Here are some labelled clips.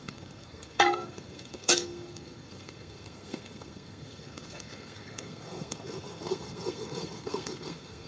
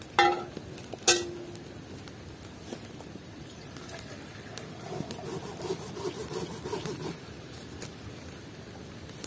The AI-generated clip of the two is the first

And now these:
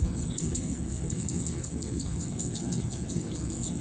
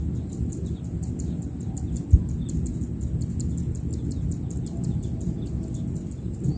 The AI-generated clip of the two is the first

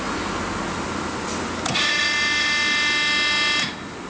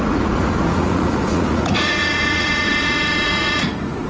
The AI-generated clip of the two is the second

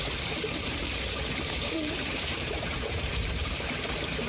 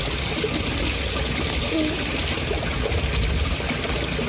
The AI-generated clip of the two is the first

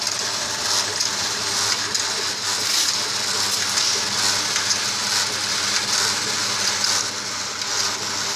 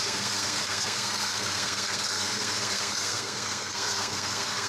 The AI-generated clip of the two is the second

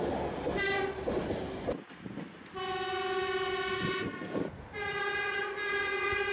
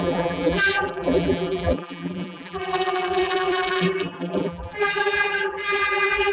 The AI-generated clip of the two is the second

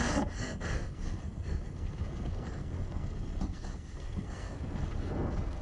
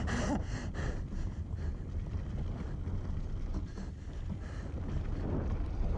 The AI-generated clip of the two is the first